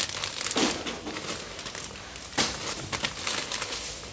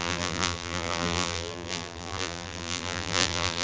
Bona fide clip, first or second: first